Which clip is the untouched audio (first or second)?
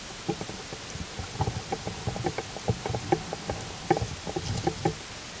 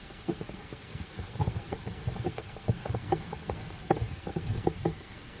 first